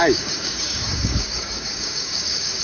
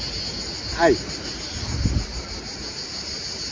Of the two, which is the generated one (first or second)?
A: first